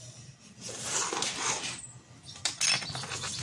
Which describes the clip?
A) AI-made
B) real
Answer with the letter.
B